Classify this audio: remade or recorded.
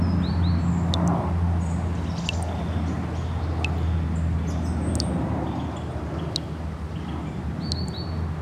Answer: recorded